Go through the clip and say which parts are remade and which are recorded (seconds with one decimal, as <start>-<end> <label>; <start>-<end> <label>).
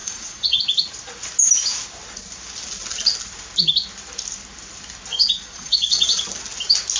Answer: 0.0-0.6 remade; 0.6-5.1 recorded; 5.1-6.2 remade; 6.2-7.0 recorded